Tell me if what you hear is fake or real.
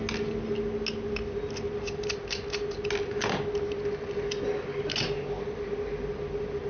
real